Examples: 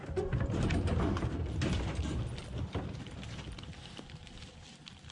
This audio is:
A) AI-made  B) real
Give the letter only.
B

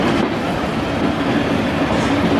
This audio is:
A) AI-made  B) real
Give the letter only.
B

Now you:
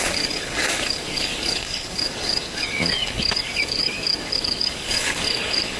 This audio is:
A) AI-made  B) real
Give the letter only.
A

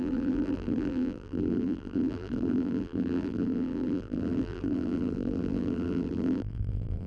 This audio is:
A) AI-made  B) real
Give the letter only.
A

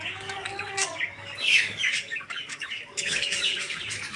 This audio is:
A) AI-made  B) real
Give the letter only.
A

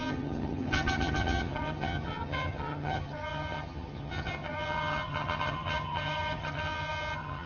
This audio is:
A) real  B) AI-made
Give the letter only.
B